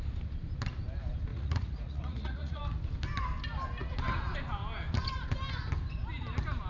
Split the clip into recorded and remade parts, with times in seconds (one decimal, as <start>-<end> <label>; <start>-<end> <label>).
0.0-1.3 recorded; 1.3-2.6 remade; 2.6-6.7 recorded